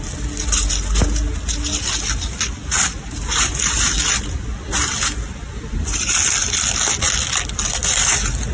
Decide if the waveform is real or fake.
real